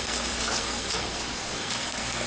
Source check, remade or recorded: remade